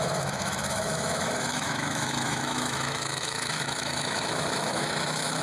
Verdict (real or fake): fake